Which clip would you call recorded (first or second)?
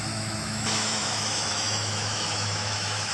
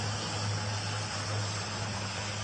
second